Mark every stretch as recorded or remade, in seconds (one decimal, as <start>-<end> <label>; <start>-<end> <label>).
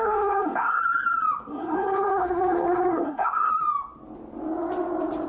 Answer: 0.0-0.8 remade; 0.8-1.5 recorded; 1.5-3.5 remade; 3.5-5.3 recorded